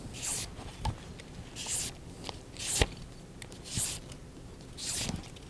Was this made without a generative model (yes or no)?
yes